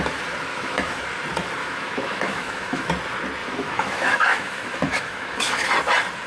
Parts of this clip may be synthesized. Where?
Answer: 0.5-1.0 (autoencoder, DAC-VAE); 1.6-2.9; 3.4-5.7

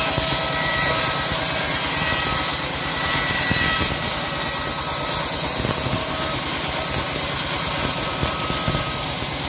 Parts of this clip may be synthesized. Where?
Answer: none

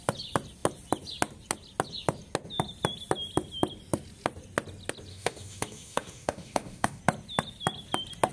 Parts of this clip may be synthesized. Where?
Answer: 5.1-7.0 (autoencoder, DAC-VAE)

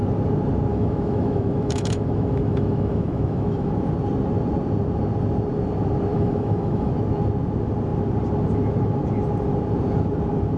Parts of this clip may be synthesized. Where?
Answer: 0.7-3.7 (autoencoder, DAC-VAE); 6.1-6.9

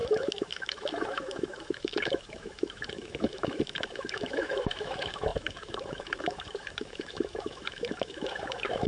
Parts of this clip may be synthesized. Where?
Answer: 0.0-8.9 (autoencoder, DAC-VAE)